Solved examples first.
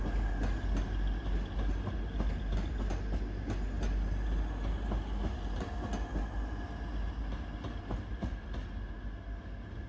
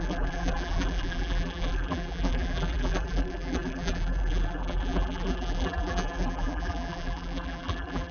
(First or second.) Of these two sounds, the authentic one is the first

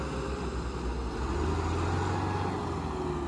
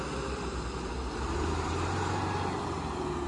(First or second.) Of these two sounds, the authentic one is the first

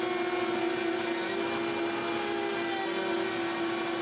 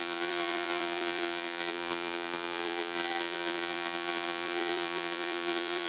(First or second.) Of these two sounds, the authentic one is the first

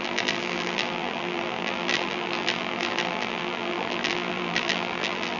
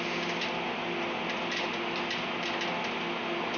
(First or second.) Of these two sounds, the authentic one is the second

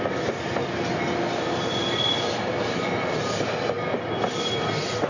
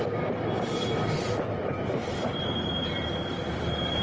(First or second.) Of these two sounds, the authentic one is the first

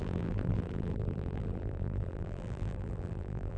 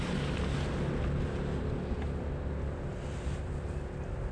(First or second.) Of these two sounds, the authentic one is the second